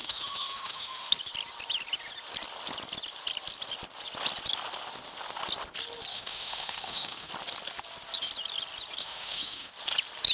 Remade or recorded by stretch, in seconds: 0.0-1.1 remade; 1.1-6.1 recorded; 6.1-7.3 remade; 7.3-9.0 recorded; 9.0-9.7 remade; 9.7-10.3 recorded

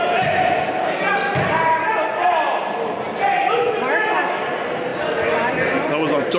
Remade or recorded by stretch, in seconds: 0.0-6.4 recorded

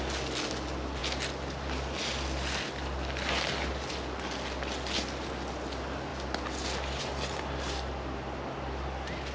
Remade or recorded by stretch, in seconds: 0.0-9.3 recorded

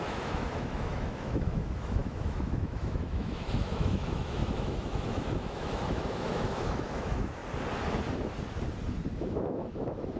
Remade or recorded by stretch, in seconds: 0.0-7.4 remade; 7.4-9.2 recorded; 9.2-10.2 remade

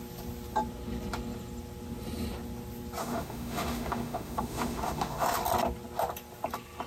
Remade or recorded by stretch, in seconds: 0.0-3.0 recorded; 3.0-5.4 remade; 5.4-6.9 recorded